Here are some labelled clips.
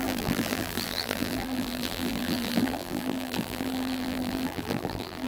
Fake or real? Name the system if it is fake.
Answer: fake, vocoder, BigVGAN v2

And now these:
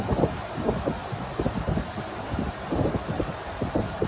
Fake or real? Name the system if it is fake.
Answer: fake, vocoder, BigVGAN v2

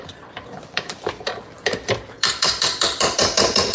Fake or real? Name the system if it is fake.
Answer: fake, vocoder, BigVGAN v2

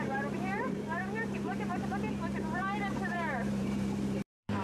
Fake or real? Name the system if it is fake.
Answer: fake, vocoder, BigVGAN v2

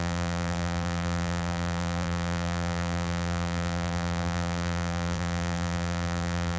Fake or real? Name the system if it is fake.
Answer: fake, vocoder, BigVGAN v2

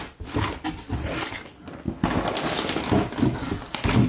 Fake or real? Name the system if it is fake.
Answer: real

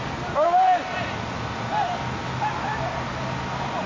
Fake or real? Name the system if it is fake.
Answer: real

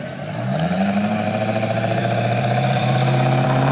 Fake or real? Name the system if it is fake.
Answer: fake, vocoder, BigVGAN v2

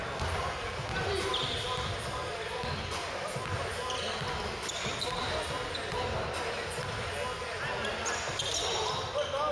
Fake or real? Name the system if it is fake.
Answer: real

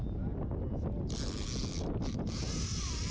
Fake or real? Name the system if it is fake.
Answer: real